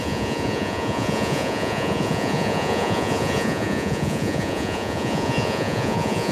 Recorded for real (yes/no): no